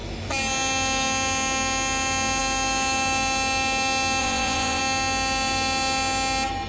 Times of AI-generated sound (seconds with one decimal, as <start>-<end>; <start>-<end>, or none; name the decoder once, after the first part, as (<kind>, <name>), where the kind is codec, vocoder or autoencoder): 4.2-4.8 (vocoder, Vocos)